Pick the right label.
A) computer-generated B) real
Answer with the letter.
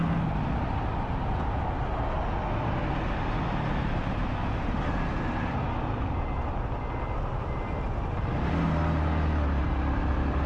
B